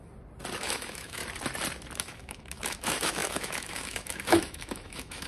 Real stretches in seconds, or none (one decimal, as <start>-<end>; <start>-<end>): 0.0-0.6; 1.2-2.0